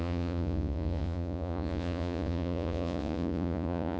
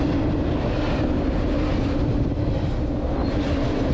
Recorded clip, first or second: second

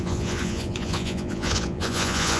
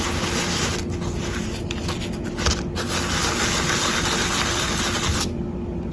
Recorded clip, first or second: second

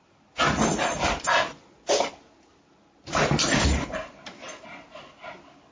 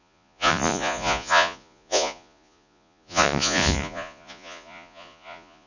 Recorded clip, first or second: first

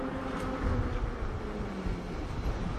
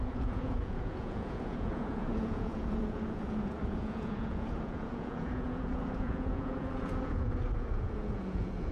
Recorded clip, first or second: first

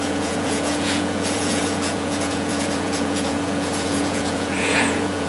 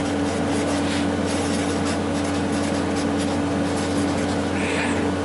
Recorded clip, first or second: second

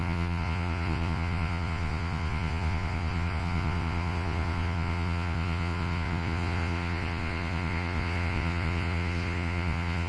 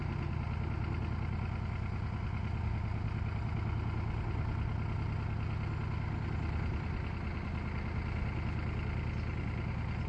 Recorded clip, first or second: second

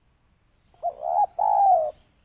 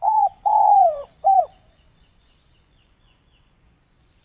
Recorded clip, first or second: first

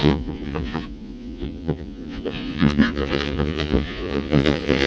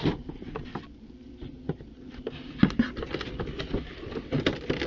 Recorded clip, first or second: second